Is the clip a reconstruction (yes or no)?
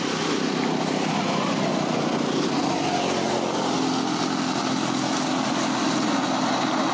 no